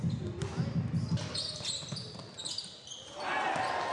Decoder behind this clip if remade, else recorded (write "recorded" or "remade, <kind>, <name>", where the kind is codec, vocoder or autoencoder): recorded